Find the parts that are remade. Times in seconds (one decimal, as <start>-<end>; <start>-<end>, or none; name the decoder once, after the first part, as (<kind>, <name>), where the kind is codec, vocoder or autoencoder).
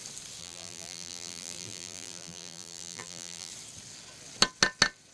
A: 0.4-3.5 (vocoder, BigVGAN v2)